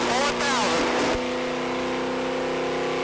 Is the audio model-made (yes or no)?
no